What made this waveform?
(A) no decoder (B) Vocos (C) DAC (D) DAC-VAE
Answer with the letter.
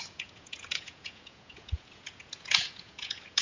B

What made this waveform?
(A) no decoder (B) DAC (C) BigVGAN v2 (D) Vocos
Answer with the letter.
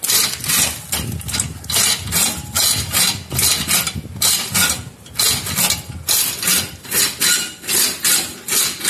A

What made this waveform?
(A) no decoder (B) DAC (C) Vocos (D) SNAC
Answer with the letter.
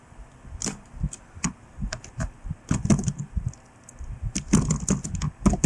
A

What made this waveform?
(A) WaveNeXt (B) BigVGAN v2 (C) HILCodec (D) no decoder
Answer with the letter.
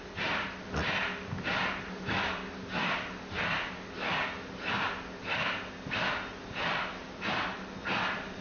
D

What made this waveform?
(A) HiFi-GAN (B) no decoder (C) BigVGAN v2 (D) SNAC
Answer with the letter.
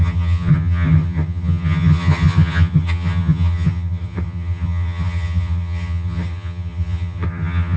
A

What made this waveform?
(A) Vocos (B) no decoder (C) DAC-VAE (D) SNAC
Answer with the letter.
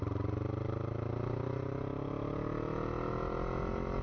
B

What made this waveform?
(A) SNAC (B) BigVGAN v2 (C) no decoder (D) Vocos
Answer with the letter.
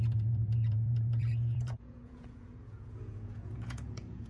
D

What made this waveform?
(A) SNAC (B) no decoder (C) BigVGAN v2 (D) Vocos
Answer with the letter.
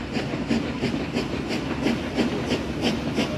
B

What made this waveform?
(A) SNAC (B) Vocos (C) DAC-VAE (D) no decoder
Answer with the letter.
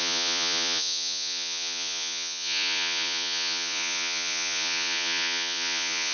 B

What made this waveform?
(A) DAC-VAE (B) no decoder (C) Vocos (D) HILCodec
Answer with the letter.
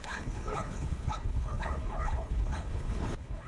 D